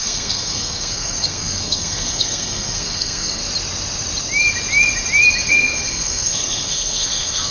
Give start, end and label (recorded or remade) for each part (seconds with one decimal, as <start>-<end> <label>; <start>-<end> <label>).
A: 0.0-3.4 remade; 3.4-5.5 recorded; 5.5-7.5 remade